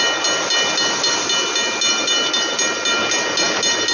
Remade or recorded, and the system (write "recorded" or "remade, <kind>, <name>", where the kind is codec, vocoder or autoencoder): recorded